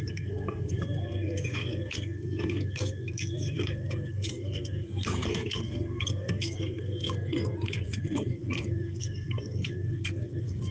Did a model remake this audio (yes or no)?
yes